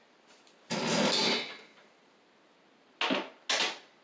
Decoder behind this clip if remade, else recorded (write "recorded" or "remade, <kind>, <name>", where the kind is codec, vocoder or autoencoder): recorded